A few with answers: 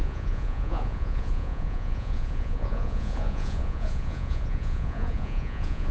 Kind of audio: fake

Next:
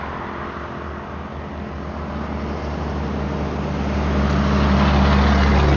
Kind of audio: real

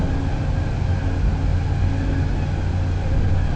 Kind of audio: real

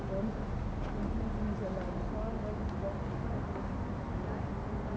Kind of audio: real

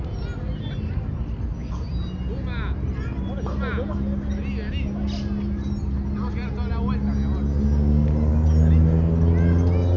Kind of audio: real